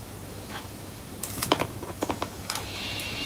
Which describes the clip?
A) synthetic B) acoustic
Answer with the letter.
A